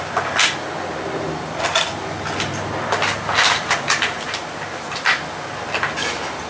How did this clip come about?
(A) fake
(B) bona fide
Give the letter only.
B